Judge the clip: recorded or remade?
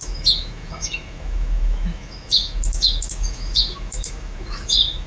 remade